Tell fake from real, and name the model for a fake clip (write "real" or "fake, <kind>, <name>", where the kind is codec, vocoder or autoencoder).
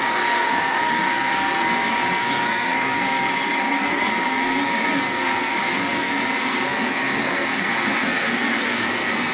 fake, codec, SNAC